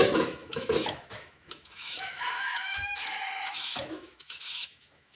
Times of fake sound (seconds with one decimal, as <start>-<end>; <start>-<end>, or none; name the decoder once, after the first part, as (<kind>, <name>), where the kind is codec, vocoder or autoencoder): 0.0-5.2 (autoencoder, DAC-VAE)